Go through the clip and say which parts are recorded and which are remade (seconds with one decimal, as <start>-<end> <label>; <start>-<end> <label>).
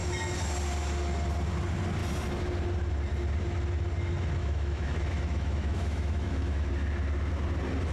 0.0-4.4 recorded; 4.4-6.7 remade; 6.7-7.9 recorded